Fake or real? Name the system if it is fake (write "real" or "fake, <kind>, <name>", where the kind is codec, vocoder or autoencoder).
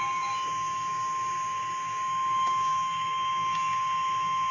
fake, codec, DAC